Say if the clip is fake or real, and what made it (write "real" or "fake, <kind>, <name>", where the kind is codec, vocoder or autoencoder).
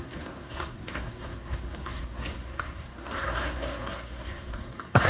fake, codec, SNAC